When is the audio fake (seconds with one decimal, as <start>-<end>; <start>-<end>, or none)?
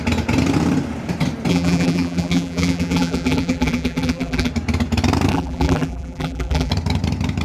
1.5-4.5; 5.3-6.7